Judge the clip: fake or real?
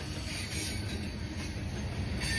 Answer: real